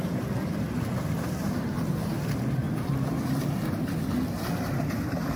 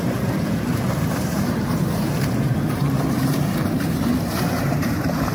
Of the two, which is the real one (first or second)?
first